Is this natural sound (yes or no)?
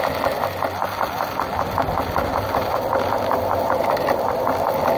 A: yes